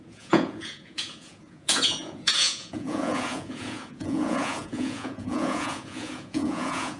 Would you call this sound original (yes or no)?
no